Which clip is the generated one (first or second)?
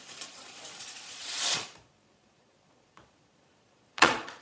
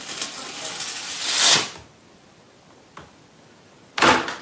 first